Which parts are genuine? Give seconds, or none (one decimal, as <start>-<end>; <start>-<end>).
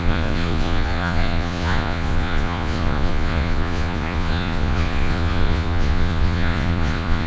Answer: none